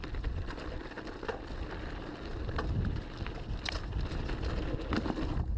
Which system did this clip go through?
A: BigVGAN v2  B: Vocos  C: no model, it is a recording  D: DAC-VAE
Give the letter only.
C